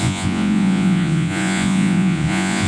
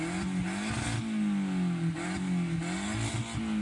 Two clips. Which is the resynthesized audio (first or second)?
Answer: first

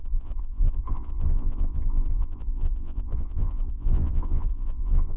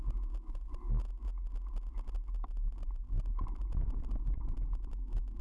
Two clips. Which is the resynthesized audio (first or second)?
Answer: first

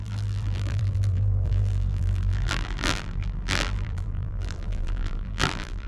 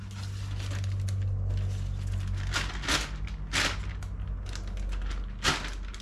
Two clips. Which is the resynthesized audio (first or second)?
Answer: first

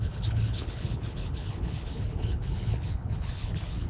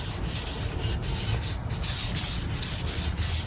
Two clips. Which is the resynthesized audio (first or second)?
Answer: first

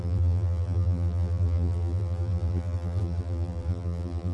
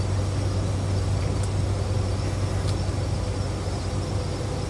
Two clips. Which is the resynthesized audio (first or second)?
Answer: first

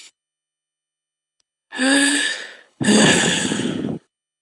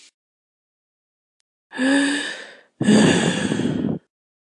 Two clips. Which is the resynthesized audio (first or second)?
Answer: first